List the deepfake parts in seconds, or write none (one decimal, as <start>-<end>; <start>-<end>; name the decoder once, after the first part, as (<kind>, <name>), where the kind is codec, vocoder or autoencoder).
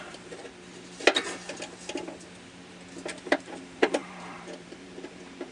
0.0-0.4 (vocoder, BigVGAN v2); 3.2-5.5